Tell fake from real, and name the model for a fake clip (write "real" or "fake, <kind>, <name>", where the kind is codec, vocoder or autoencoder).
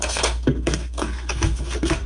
fake, codec, SNAC